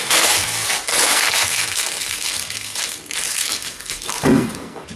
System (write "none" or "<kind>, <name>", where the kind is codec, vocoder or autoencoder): codec, SNAC